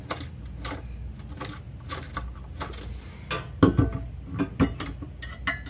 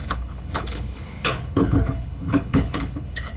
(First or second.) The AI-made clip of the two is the second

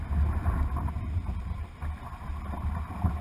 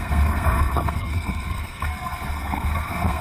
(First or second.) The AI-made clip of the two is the second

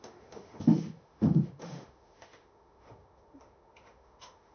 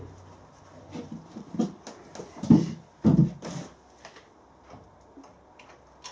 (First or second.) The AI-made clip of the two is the first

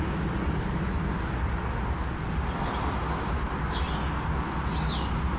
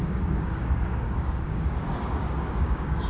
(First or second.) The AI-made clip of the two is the second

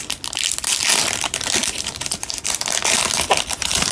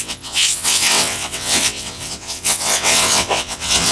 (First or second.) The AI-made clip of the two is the second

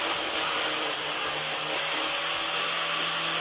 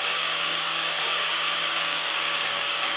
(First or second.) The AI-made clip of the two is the second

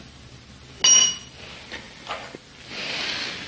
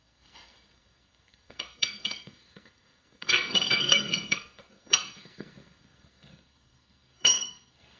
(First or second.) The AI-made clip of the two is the second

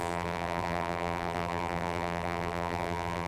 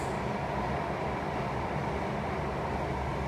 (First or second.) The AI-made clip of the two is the first